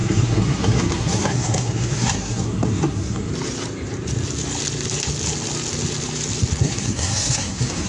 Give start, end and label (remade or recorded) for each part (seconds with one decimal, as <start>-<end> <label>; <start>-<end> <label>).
0.0-3.3 remade; 3.3-6.6 recorded; 6.6-7.9 remade